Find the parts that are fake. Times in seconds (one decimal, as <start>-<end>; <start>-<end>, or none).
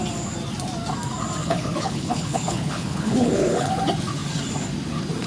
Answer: 1.4-3.7